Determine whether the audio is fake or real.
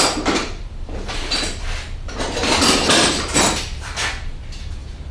real